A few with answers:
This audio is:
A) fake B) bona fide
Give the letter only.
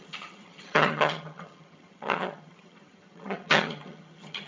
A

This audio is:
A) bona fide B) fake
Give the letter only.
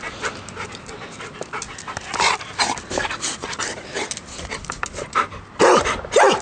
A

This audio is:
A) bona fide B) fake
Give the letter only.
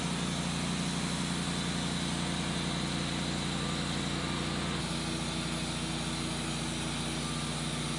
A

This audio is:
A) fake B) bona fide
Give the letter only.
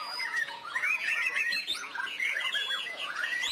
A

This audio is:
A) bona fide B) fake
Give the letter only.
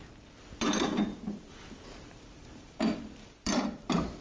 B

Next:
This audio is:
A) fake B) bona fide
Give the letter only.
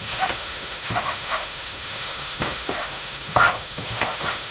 A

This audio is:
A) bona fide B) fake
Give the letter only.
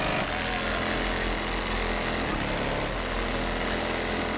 A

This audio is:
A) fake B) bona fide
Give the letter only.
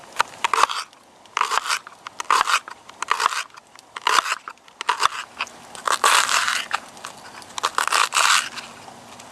B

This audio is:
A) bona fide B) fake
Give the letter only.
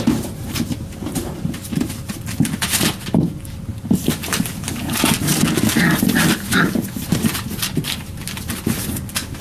A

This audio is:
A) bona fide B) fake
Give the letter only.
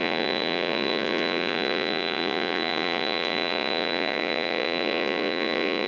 B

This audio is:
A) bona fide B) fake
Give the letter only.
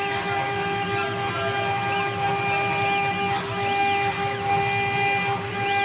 A